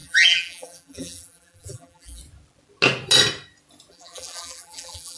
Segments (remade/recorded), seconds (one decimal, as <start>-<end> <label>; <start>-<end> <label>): 0.0-2.2 remade; 2.2-3.9 recorded; 3.9-5.2 remade